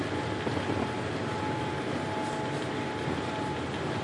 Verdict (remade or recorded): recorded